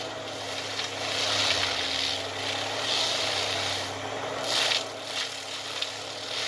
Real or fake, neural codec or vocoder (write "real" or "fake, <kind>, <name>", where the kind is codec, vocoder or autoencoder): real